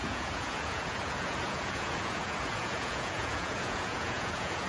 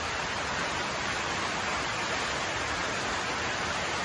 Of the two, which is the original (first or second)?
second